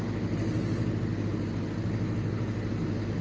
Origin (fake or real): real